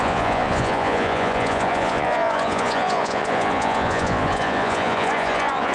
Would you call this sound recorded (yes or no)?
no